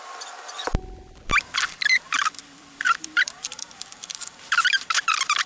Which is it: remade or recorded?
remade